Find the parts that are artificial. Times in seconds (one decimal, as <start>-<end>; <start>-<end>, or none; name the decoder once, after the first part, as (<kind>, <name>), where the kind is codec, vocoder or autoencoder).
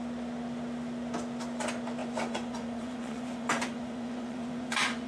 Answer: 2.0-5.1 (vocoder, Vocos)